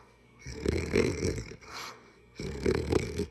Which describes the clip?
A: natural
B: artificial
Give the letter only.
B